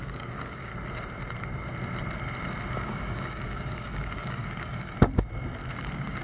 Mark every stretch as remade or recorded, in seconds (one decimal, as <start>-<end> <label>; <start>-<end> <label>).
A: 0.0-0.7 remade; 0.7-2.7 recorded; 2.7-5.1 remade; 5.1-5.8 recorded; 5.8-6.2 remade